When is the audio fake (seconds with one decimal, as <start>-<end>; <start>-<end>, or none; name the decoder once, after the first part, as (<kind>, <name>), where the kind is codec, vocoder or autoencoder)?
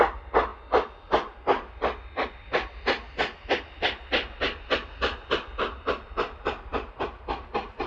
none